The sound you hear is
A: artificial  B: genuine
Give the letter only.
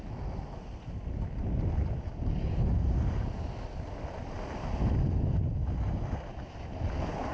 B